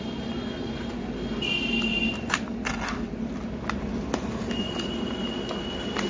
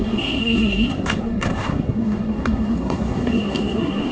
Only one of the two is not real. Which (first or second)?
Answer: second